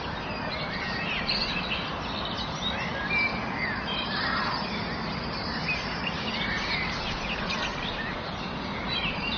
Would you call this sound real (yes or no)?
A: yes